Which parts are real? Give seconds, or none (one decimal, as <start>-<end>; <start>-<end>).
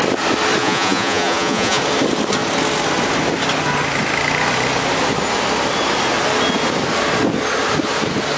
0.0-0.6; 1.8-8.4